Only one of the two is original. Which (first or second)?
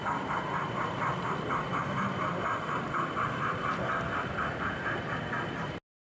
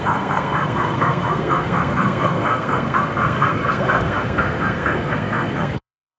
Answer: first